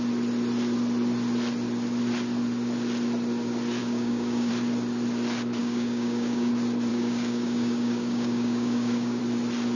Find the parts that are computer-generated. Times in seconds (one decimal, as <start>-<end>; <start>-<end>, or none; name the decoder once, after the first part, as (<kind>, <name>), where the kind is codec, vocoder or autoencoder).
3.8-4.5 (codec, DAC); 5.6-6.5; 6.9-9.2